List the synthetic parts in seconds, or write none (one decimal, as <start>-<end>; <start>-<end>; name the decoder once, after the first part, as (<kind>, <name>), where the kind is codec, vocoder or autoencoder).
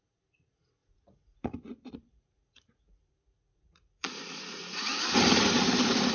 0.8-3.1 (vocoder, Vocos); 3.5-5.0